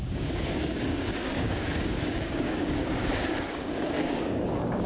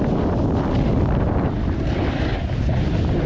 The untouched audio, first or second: second